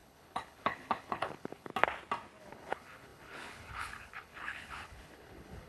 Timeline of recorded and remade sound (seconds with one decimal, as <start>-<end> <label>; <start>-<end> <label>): 0.0-1.7 remade; 1.7-2.4 recorded; 2.4-5.7 remade